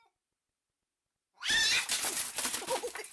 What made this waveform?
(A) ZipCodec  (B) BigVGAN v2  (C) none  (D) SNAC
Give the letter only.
C